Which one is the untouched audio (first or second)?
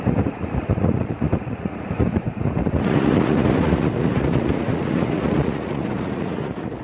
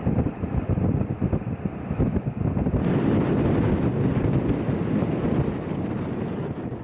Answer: second